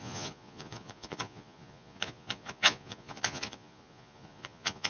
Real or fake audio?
fake